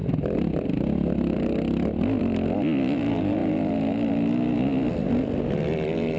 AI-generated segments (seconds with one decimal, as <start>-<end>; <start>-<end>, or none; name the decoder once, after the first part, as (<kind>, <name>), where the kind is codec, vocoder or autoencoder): none